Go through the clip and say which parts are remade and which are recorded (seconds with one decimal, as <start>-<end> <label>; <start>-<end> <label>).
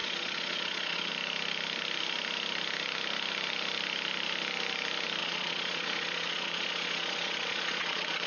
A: 0.0-1.1 remade; 1.1-5.2 recorded; 5.2-8.3 remade